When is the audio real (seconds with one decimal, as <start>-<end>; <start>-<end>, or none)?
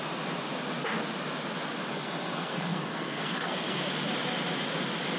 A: 0.0-1.9; 3.8-5.2